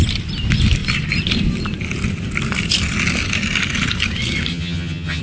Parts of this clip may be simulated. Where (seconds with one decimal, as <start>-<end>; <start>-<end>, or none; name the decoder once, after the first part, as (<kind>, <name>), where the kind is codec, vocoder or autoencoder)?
4.5-5.2 (vocoder, HiFi-GAN)